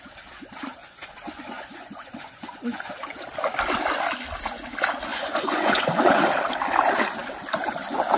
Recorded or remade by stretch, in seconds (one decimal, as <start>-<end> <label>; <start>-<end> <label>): 0.0-0.8 recorded; 0.8-2.9 remade; 2.9-5.1 recorded; 5.1-6.2 remade; 6.2-8.2 recorded